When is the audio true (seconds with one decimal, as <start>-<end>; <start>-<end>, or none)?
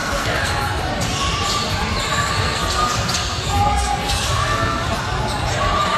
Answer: 0.8-2.1; 4.9-6.0